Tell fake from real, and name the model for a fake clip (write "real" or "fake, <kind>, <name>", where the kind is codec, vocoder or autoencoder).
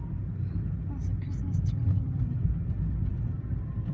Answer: real